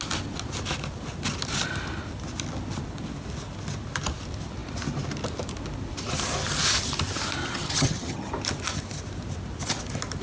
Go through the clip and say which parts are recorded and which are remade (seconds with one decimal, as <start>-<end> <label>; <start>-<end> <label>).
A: 0.0-7.4 recorded; 7.4-8.3 remade; 8.3-10.2 recorded